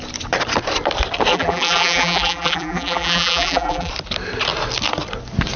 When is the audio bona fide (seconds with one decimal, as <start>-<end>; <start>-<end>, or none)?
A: 0.0-1.3; 3.9-5.6